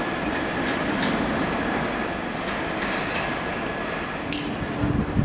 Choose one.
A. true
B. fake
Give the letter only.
A